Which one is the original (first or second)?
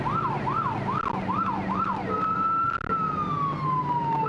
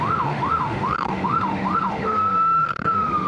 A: first